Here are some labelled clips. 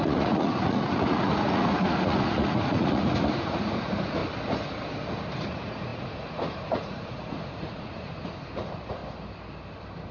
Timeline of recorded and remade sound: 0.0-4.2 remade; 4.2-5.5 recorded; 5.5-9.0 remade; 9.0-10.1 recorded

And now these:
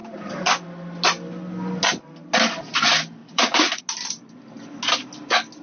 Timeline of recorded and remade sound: 0.0-3.2 recorded; 3.2-3.8 remade; 3.8-5.6 recorded